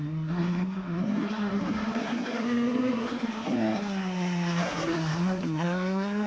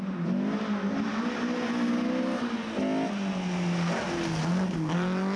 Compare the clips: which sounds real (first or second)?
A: second